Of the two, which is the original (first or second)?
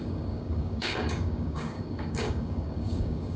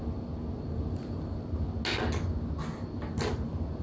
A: second